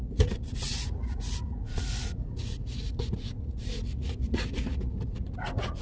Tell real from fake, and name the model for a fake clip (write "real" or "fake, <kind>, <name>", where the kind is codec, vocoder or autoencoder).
fake, vocoder, Vocos